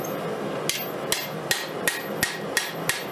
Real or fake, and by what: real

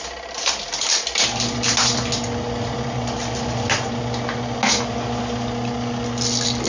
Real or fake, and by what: real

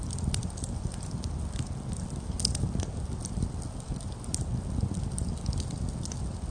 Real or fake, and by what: real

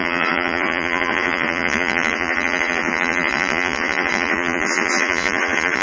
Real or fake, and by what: fake, vocoder, Vocos